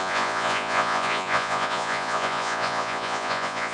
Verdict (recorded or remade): remade